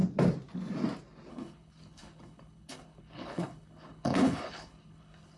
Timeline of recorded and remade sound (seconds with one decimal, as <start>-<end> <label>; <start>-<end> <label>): 0.0-1.3 recorded; 1.3-5.4 remade